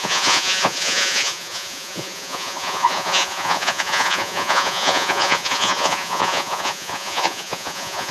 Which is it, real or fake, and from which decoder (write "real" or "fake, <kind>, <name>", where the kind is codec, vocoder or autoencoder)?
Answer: fake, vocoder, Vocos